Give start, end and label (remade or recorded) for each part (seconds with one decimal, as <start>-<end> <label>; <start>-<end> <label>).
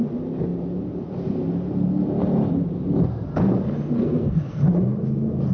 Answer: 0.0-4.0 recorded; 4.0-4.6 remade; 4.6-5.5 recorded